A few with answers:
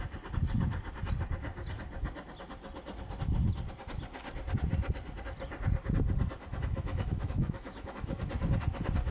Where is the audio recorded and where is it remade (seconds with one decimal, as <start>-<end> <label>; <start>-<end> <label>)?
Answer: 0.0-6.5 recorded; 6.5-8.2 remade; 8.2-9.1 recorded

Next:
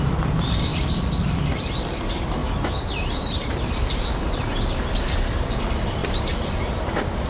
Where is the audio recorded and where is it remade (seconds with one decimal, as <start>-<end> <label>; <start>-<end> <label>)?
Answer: 0.0-2.4 recorded; 2.4-5.2 remade; 5.2-6.0 recorded; 6.0-6.7 remade; 6.7-7.3 recorded

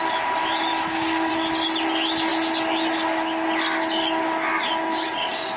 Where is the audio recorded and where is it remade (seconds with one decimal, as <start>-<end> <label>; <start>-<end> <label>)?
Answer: 0.0-0.7 recorded; 0.7-1.3 remade; 1.3-5.6 recorded

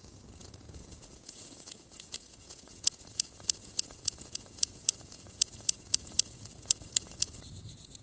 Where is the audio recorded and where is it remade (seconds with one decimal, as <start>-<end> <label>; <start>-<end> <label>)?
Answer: 0.0-8.0 remade